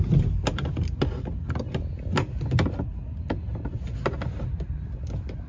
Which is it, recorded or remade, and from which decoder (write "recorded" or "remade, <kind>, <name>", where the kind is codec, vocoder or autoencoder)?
recorded